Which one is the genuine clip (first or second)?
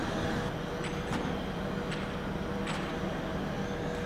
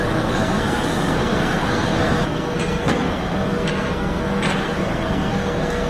first